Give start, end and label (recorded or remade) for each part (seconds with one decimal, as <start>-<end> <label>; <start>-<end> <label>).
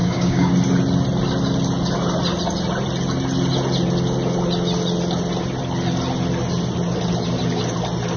0.0-0.5 remade; 0.5-8.2 recorded